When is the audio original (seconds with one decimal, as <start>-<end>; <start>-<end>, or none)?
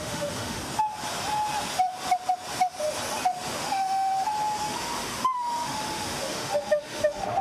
0.6-3.5; 4.1-4.6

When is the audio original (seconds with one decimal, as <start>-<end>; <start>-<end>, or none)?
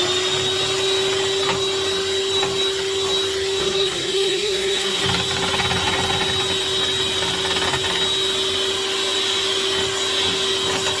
0.0-3.6; 5.0-11.0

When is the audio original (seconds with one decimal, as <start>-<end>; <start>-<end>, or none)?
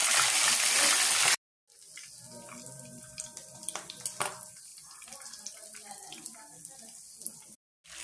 0.0-8.0